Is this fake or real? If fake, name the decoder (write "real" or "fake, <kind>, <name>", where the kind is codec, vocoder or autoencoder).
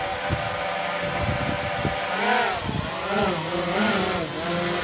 real